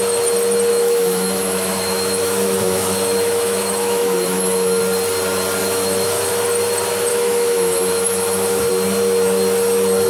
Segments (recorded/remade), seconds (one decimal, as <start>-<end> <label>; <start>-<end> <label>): 0.0-0.7 recorded; 0.7-4.8 remade; 4.8-5.6 recorded; 5.6-6.3 remade; 6.3-7.1 recorded; 7.1-8.7 remade; 8.7-10.1 recorded